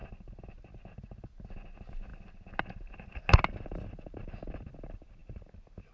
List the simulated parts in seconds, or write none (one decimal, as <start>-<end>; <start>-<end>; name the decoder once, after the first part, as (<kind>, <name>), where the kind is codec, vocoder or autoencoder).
none